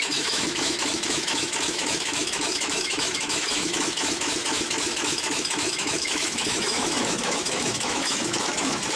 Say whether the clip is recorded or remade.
remade